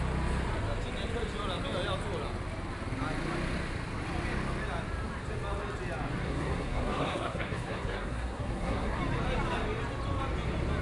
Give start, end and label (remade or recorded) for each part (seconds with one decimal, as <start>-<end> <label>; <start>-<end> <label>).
0.0-6.2 recorded; 6.2-9.0 remade; 9.0-10.8 recorded